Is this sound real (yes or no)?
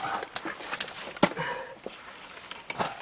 yes